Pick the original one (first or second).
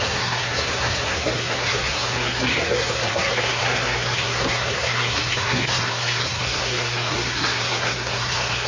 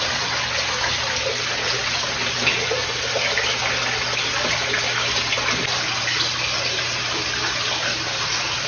second